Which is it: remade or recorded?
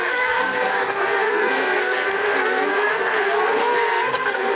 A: remade